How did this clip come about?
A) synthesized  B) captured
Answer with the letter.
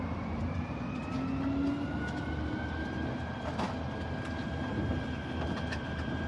B